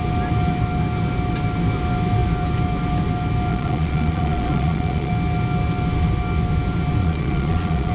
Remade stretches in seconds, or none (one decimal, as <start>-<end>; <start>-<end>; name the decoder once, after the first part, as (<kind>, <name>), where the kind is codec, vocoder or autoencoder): 3.5-5.1 (vocoder, Vocos); 7.0-7.9